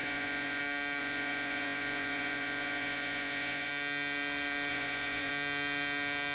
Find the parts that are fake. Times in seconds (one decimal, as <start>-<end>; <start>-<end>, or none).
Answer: 0.0-0.6; 1.0-3.7; 4.7-5.3